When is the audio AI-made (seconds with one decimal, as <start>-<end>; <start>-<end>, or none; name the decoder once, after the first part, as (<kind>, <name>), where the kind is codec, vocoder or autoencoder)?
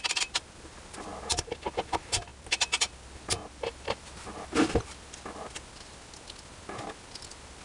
none